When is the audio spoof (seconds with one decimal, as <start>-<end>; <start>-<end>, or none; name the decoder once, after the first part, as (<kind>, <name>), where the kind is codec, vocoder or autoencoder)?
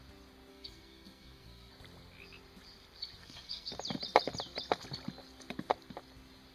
0.5-1.7 (codec, SNAC); 3.2-3.7